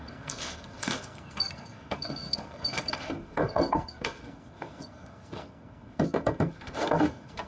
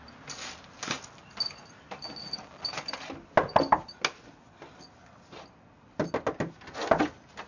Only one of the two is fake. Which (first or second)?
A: first